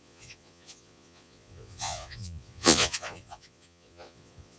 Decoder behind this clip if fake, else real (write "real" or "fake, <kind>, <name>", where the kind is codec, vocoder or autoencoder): fake, vocoder, Vocos